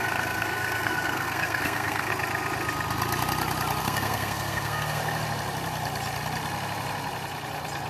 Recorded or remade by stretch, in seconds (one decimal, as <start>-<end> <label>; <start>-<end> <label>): 0.0-2.1 remade; 2.1-3.8 recorded; 3.8-5.0 remade; 5.0-7.9 recorded